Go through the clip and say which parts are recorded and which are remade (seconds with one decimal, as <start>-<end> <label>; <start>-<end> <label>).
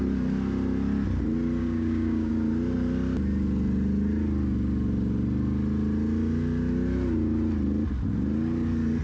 0.0-1.6 recorded; 1.6-2.3 remade; 2.3-9.0 recorded